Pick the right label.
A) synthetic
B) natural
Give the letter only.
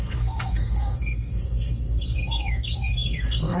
A